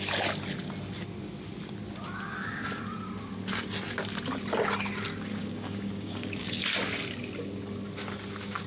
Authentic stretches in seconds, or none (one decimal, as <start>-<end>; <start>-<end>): 0.0-5.3; 6.6-8.7